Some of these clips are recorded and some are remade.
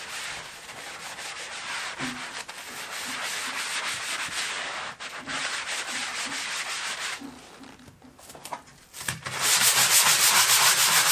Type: recorded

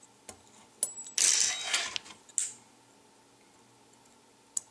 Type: recorded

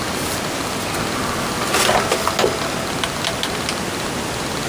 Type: recorded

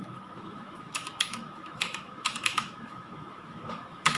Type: remade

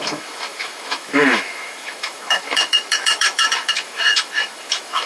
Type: remade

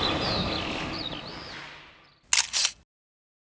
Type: recorded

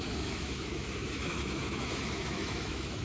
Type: remade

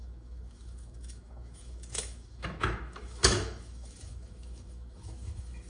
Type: remade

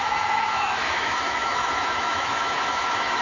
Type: remade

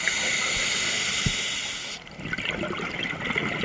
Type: recorded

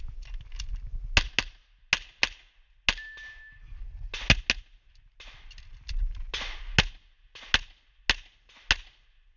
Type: recorded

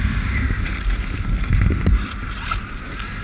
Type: recorded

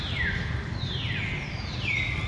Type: recorded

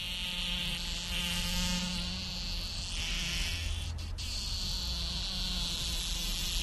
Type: recorded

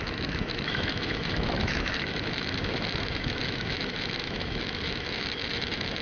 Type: remade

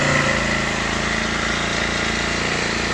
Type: recorded